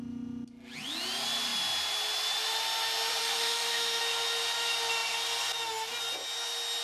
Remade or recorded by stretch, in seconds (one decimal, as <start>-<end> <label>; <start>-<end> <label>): 0.0-3.2 recorded; 3.2-4.0 remade; 4.0-6.8 recorded